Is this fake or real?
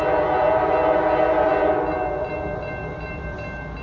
real